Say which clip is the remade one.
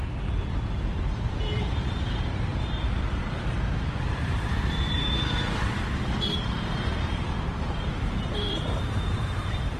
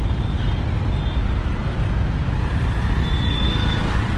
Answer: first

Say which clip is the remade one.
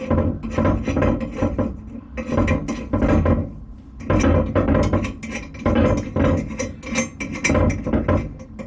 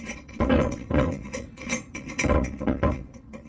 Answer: second